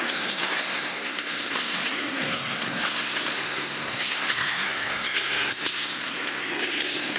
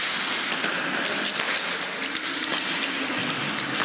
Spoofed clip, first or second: first